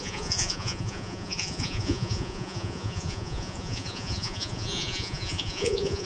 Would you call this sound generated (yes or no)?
yes